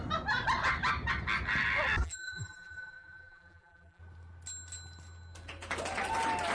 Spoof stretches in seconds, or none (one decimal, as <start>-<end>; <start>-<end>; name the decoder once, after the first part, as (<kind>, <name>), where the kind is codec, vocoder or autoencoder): 2.0-4.0 (vocoder, BigVGAN v2)